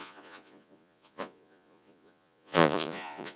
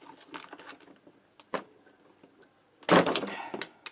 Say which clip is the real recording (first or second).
second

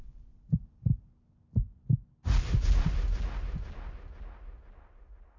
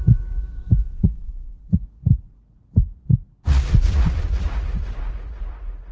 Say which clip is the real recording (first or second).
first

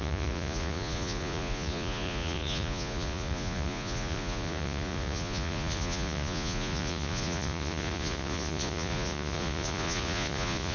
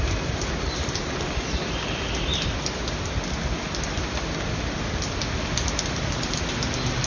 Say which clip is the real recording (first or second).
second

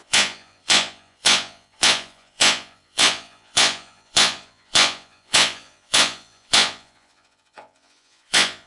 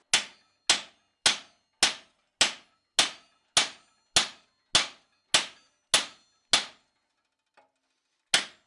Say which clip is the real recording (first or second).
second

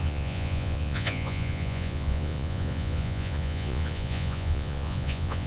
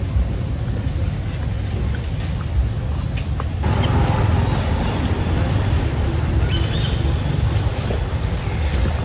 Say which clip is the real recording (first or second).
second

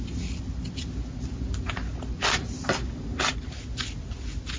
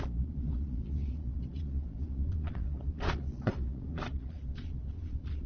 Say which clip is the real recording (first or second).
first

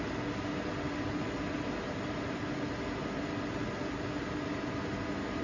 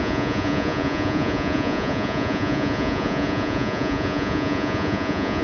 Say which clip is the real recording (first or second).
first